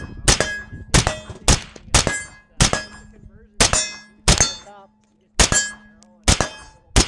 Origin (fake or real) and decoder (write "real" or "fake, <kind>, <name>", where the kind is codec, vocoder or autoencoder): real